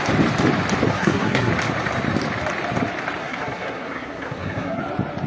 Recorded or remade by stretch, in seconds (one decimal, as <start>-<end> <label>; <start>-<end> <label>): 0.0-0.9 recorded; 0.9-1.5 remade; 1.5-3.2 recorded; 3.2-4.8 remade; 4.8-5.3 recorded